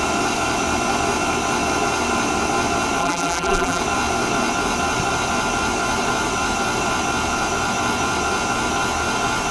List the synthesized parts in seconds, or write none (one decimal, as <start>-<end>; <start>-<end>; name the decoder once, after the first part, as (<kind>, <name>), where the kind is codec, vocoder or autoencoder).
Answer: 3.0-3.8 (vocoder, BigVGAN v2)